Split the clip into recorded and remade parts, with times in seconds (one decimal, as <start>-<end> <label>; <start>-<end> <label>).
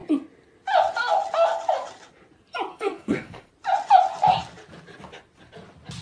0.0-2.7 recorded; 2.7-3.5 remade; 3.5-6.0 recorded